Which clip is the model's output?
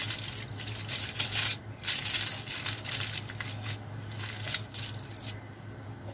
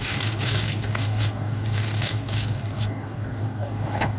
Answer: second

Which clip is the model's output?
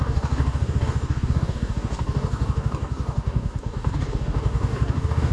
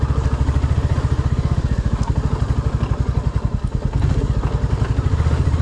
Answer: first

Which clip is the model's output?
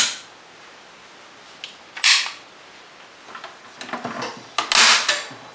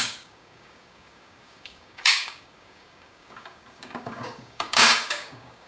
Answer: second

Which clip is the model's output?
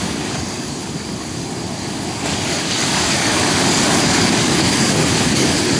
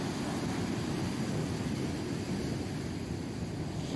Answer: first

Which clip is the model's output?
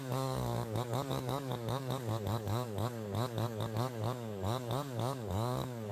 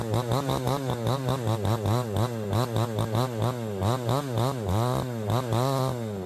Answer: first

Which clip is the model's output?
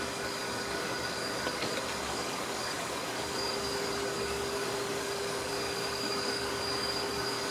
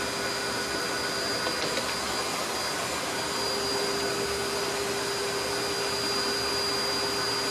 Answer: first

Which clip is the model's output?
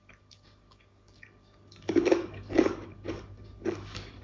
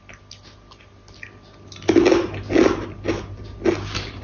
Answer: first